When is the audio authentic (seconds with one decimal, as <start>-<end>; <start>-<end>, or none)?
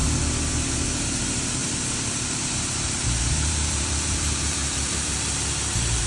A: 0.0-0.6